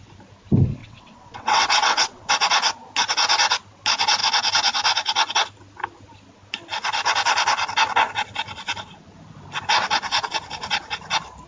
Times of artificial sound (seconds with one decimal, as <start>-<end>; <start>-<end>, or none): 0.8-2.3